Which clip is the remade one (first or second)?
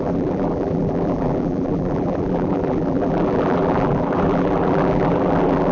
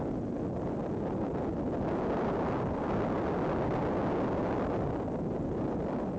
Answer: first